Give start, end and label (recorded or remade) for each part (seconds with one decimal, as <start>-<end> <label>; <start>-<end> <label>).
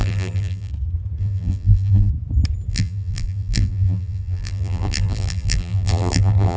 0.0-0.7 remade; 0.7-1.2 recorded; 1.2-2.1 remade; 2.1-2.7 recorded; 2.7-6.6 remade